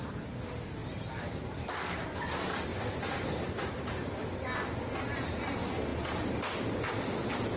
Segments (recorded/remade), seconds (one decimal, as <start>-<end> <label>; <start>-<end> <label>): 0.0-7.6 recorded